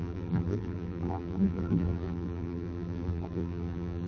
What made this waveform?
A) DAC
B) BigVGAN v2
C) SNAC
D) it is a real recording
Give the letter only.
B